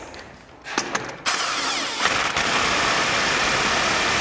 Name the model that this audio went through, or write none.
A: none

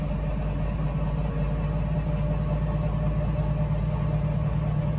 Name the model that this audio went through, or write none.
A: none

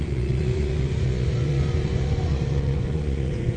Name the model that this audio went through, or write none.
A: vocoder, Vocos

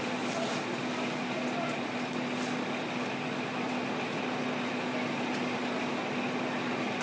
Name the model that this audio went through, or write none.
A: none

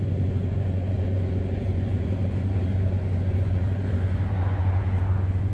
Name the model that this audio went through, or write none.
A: vocoder, Vocos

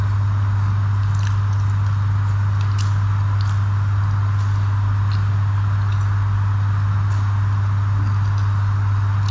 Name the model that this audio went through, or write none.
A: none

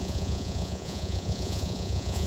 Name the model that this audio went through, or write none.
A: vocoder, Vocos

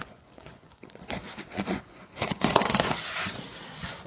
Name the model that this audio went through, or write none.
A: vocoder, Vocos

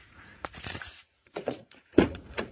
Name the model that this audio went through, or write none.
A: vocoder, Vocos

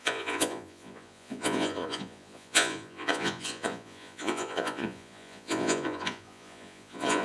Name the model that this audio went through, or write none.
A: vocoder, Vocos